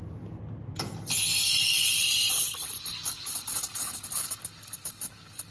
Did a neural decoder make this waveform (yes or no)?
no